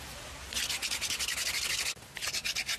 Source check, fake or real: real